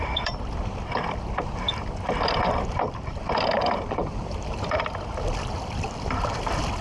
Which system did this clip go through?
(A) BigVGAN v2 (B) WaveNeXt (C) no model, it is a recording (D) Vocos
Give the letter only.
A